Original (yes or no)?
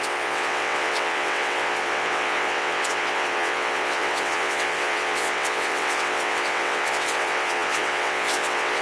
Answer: no